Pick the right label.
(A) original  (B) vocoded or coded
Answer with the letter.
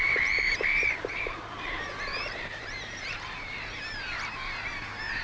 B